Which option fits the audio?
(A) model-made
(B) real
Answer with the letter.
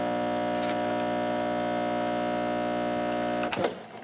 B